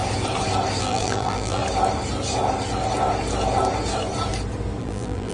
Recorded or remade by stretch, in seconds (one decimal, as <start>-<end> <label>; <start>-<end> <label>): 0.0-0.8 recorded; 0.8-1.6 remade; 1.6-4.8 recorded; 4.8-5.3 remade